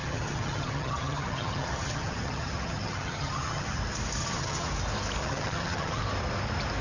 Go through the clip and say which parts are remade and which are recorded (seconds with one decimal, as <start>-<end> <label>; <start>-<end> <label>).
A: 0.0-3.8 remade; 3.8-4.2 recorded; 4.2-4.7 remade; 4.7-5.2 recorded; 5.2-6.0 remade; 6.0-6.8 recorded